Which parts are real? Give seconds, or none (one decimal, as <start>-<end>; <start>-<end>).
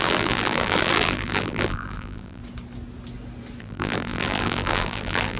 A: 2.4-3.6